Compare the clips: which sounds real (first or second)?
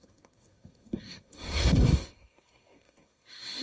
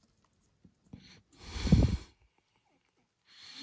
second